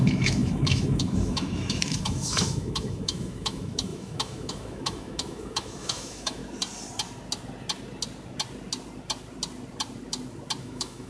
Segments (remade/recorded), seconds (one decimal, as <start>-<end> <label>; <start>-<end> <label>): 0.0-6.4 remade; 6.4-10.6 recorded; 10.6-11.1 remade